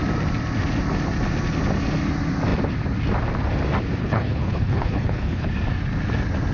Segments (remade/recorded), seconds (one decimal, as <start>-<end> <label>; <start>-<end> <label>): 0.0-4.0 recorded; 4.0-5.5 remade; 5.5-6.5 recorded